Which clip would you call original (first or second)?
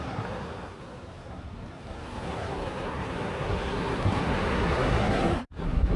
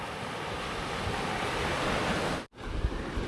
second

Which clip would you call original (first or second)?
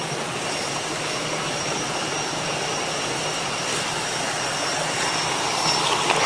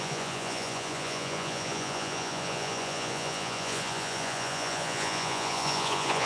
first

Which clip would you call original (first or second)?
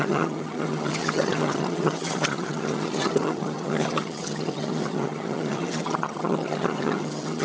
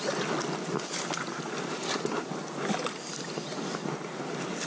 second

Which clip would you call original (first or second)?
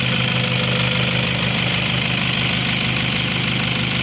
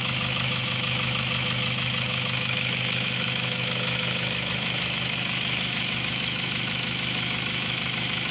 first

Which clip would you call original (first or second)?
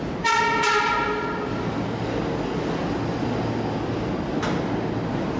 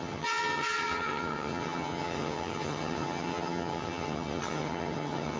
first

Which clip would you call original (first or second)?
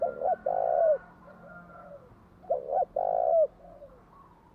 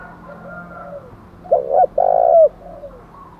second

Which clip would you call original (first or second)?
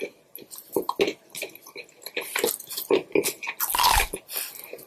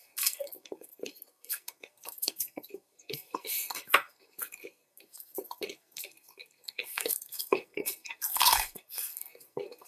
first